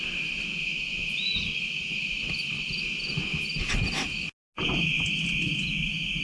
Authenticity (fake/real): real